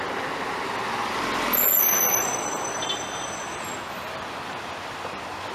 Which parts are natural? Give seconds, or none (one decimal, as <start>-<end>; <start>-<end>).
0.0-5.5